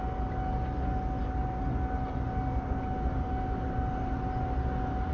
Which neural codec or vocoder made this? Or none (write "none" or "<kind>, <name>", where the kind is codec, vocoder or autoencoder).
none